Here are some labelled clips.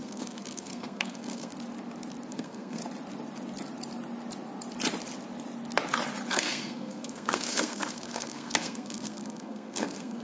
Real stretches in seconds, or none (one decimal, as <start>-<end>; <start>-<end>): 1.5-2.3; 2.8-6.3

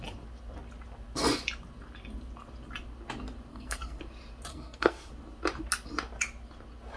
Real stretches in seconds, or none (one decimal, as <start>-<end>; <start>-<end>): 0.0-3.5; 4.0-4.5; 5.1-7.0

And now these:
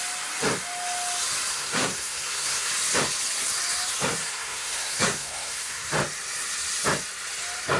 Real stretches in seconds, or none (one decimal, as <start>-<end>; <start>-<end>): 0.0-1.5; 2.7-4.2; 5.9-7.8

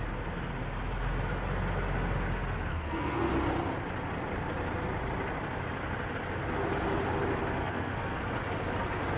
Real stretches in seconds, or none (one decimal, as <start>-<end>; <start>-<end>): 0.0-2.7; 3.3-7.6; 8.2-9.2